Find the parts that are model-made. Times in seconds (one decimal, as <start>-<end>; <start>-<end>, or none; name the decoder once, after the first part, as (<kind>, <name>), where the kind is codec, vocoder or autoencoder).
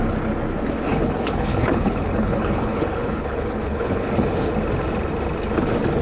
0.9-4.5 (codec, HILCodec)